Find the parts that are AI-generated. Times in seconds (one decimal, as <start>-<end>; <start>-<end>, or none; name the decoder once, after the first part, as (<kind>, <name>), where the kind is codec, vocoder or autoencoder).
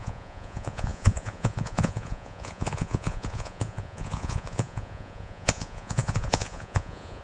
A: 0.0-7.2 (vocoder, Vocos)